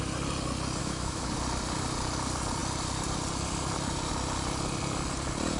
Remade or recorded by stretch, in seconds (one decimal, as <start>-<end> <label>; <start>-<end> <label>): 0.0-0.8 recorded; 0.8-1.3 remade; 1.3-5.6 recorded